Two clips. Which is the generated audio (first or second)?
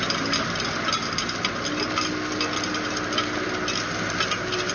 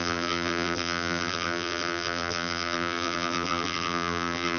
second